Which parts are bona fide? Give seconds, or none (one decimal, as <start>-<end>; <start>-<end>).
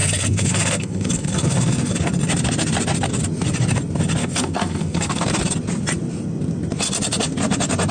1.9-4.2; 5.2-7.9